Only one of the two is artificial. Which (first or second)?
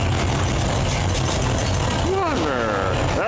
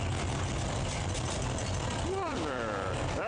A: second